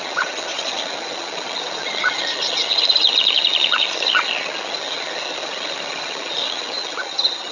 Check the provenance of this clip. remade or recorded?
remade